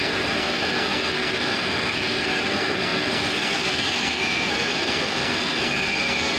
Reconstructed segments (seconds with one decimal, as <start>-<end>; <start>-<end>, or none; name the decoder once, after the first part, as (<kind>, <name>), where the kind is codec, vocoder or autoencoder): 0.0-6.4 (codec, SNAC)